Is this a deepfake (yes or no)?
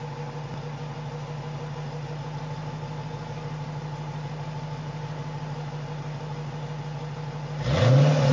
no